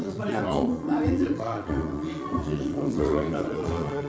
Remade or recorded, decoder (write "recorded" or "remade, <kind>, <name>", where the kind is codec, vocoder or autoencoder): remade, vocoder, Vocos